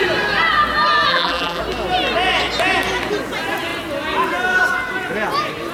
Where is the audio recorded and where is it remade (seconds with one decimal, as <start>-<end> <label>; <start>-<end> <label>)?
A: 0.0-1.1 recorded; 1.1-1.6 remade; 1.6-5.7 recorded